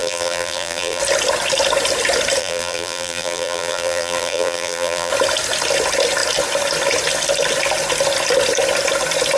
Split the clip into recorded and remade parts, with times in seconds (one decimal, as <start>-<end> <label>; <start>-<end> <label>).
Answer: 0.0-1.0 remade; 1.0-2.4 recorded; 2.4-5.1 remade; 5.1-9.4 recorded